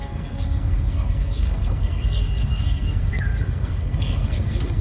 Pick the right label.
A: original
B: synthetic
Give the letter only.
B